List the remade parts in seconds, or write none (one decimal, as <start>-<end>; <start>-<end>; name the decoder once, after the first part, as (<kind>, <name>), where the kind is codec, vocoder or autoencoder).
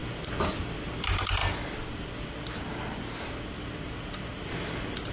none